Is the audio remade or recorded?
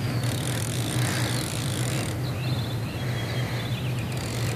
recorded